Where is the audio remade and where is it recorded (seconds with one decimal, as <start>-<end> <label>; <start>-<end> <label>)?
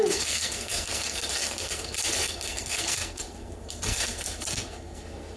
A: 0.0-5.4 remade